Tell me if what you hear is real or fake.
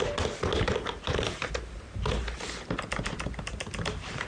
real